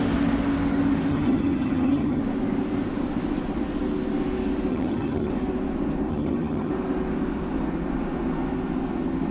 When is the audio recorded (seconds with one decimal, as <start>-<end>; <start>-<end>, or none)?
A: 0.0-1.1; 2.2-4.7; 5.3-6.1; 6.7-9.3